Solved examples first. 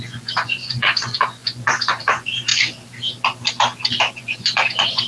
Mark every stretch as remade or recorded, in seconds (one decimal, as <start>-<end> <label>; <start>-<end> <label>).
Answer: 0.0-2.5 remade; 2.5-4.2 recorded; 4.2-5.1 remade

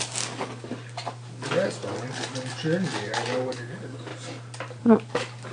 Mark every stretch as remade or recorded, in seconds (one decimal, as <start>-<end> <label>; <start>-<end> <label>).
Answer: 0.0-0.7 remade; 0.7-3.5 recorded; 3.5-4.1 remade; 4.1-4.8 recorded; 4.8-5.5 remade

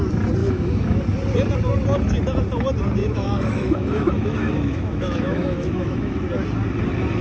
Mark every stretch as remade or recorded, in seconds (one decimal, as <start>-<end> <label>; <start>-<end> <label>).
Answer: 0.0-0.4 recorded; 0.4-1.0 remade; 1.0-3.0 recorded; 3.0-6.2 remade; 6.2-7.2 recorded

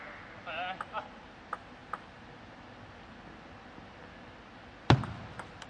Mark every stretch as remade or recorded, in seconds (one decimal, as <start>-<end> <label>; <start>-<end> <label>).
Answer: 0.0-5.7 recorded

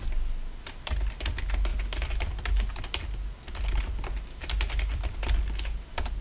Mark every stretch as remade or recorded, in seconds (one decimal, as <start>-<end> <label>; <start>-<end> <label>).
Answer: 0.0-6.2 recorded